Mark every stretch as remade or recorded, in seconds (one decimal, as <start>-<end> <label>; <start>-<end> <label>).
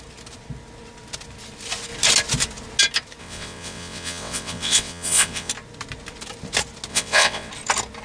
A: 0.0-3.2 recorded; 3.2-5.5 remade; 5.5-6.9 recorded; 6.9-7.5 remade; 7.5-8.0 recorded